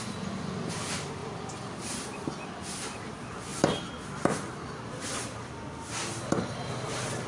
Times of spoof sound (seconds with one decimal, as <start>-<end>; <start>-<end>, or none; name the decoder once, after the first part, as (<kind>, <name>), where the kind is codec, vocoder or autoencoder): none